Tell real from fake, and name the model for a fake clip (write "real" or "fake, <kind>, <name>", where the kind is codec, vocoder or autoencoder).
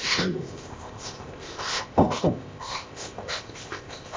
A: fake, codec, ZipCodec